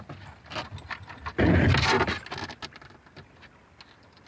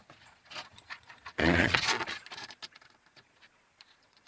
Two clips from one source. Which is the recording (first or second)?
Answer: first